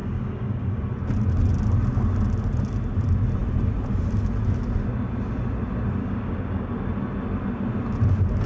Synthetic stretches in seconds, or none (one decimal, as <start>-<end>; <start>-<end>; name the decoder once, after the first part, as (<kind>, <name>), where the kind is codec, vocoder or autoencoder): 0.0-0.8 (codec, DAC); 6.0-6.7